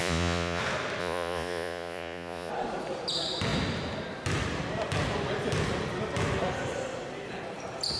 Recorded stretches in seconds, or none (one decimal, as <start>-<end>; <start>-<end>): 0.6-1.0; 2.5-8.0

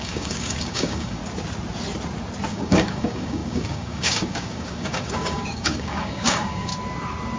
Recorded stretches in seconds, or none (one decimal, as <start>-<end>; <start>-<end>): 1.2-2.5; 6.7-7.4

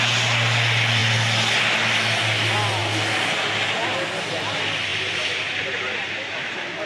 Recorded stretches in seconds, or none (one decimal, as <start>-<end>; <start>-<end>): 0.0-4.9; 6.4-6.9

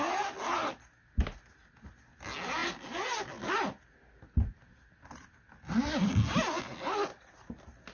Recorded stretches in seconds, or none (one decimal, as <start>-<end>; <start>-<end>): 0.0-7.9

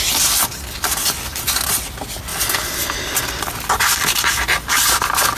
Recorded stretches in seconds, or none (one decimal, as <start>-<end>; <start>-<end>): 0.0-5.4

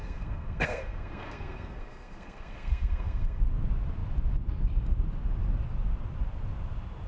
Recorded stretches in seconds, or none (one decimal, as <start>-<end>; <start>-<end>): 3.4-7.1

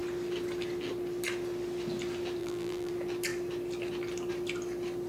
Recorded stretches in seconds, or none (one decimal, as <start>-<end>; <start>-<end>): 0.0-2.4; 2.9-5.1

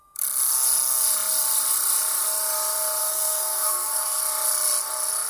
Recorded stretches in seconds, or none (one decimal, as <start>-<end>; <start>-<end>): 0.0-3.0; 4.2-5.3